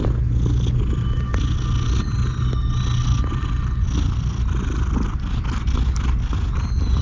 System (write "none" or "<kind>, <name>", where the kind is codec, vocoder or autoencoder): none